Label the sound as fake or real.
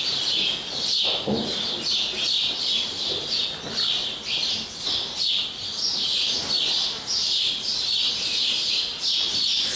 real